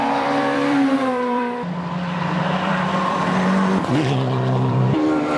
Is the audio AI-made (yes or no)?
yes